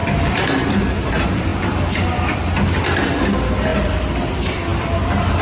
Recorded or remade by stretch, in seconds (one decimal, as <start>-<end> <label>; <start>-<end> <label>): 0.0-0.7 remade; 0.7-3.7 recorded; 3.7-4.3 remade; 4.3-5.4 recorded

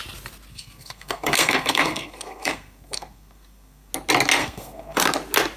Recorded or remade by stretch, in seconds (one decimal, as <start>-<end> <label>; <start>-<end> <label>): 0.0-0.5 recorded; 0.5-3.9 remade; 3.9-4.4 recorded; 4.4-5.0 remade; 5.0-5.6 recorded

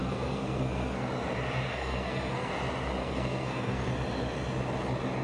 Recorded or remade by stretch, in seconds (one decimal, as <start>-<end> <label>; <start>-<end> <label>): 0.0-1.1 remade; 1.1-1.7 recorded; 1.7-2.5 remade; 2.5-3.0 recorded; 3.0-3.9 remade; 3.9-5.2 recorded

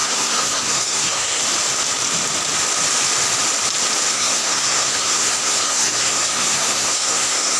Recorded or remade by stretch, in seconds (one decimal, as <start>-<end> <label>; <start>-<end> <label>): 0.0-1.4 remade; 1.4-4.1 recorded; 4.1-7.6 remade

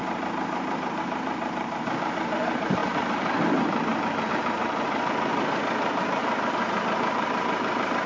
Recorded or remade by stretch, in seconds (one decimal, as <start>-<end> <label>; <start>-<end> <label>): 0.0-8.1 remade

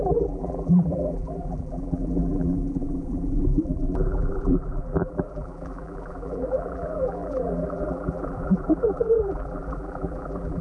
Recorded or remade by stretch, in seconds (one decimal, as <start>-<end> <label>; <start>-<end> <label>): 0.0-10.6 remade

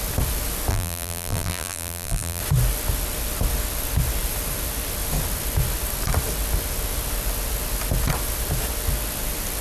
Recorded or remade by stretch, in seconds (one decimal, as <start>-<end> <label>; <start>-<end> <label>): 0.0-0.7 recorded; 0.7-2.4 remade; 2.4-9.6 recorded